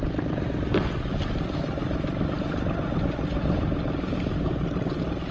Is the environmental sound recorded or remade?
recorded